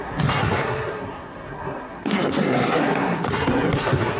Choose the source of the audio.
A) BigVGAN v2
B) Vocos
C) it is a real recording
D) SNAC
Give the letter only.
D